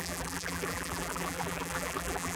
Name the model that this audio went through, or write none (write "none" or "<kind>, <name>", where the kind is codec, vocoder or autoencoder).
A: vocoder, BigVGAN v2